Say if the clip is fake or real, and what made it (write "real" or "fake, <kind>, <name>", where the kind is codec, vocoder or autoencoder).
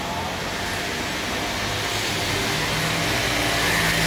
real